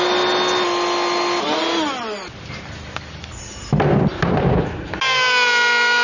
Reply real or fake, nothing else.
real